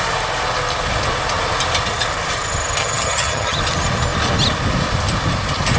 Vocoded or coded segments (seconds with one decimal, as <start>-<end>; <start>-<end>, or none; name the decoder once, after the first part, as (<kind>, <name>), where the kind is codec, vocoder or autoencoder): 2.8-3.6 (vocoder, HiFi-GAN)

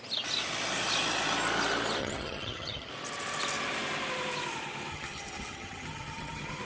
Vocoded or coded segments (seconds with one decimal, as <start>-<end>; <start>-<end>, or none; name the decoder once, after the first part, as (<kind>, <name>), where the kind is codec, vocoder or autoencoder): 2.0-2.9 (vocoder, HiFi-GAN); 4.9-6.6

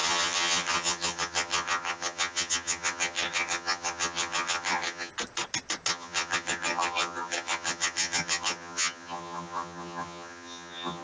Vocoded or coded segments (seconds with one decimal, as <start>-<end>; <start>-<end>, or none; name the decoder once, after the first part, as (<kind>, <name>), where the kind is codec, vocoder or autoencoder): 0.0-5.1 (vocoder, HiFi-GAN); 5.9-11.0

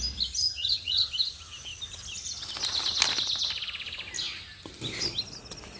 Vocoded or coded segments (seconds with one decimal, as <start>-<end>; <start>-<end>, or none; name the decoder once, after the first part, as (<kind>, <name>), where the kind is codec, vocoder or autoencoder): 0.4-1.1 (vocoder, HiFi-GAN)

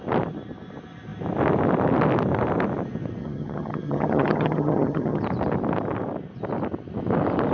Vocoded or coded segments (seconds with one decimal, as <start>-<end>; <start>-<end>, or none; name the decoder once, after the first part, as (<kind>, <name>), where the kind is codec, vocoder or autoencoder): 3.2-5.2 (vocoder, HiFi-GAN)